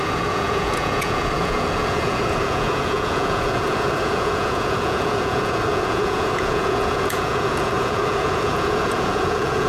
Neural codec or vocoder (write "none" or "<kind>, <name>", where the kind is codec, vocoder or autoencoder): vocoder, Vocos